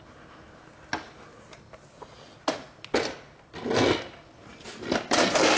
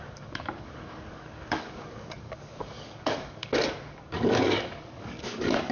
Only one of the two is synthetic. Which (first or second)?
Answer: second